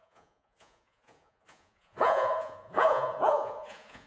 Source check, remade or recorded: remade